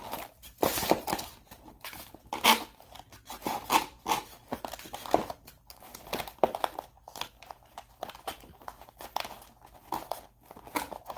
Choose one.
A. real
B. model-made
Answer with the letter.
A